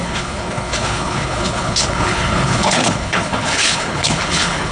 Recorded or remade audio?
remade